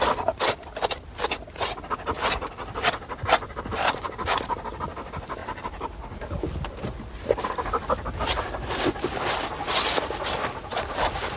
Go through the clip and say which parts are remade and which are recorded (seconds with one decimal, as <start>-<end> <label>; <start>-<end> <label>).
0.0-11.4 recorded